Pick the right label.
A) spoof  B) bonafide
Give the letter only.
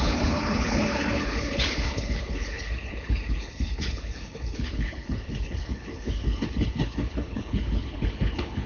A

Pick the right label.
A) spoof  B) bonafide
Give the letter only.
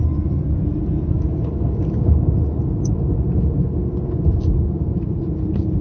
B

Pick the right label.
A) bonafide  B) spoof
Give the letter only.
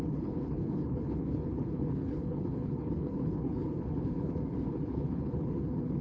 B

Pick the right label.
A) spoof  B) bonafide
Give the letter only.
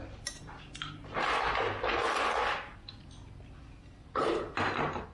B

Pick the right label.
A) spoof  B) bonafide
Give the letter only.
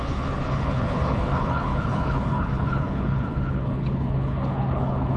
A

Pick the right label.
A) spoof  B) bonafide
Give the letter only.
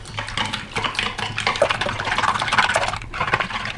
B